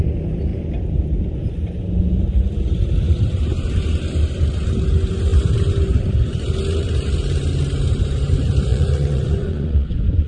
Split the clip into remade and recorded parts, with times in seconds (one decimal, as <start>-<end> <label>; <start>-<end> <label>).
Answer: 0.0-8.7 recorded; 8.7-10.3 remade